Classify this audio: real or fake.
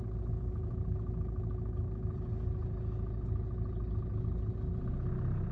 real